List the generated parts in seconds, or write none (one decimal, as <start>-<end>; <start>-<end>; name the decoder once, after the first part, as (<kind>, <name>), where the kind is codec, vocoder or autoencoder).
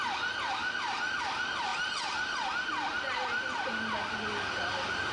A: none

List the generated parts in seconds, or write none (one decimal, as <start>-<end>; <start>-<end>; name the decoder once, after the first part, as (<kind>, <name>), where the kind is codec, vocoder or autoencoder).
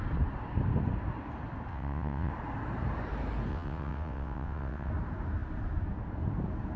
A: 1.7-2.3 (vocoder, WaveNeXt); 3.5-4.9